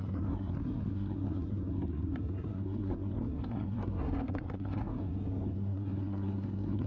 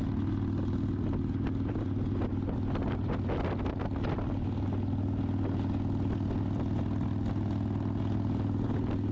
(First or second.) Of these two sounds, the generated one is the first